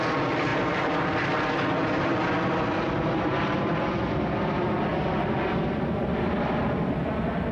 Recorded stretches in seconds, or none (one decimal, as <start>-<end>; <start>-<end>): 0.0-7.5